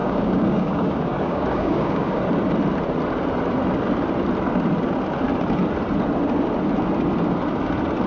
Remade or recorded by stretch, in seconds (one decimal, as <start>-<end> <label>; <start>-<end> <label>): 0.0-2.2 remade; 2.2-8.1 recorded